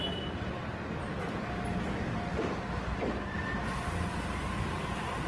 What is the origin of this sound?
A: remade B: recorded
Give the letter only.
B